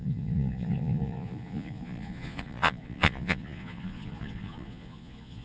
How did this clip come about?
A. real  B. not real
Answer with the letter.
B